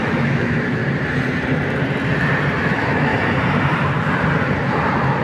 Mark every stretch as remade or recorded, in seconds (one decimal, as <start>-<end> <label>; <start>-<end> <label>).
0.0-0.8 remade; 0.8-2.6 recorded; 2.6-3.1 remade; 3.1-5.2 recorded